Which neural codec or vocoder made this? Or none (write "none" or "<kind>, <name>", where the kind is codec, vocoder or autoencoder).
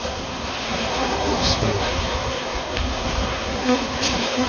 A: codec, SNAC